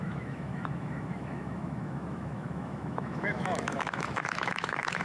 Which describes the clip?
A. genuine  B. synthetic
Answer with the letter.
B